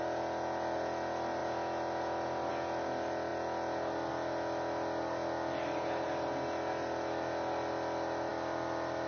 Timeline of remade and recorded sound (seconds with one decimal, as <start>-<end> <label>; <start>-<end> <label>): 0.0-9.1 recorded